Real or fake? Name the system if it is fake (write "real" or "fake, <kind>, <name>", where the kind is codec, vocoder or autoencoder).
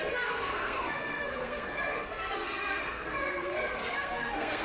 fake, codec, SNAC